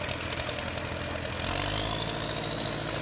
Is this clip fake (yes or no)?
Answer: no